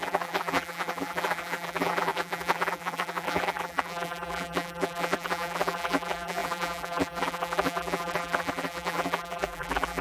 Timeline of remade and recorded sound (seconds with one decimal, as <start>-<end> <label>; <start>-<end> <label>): 0.0-10.0 remade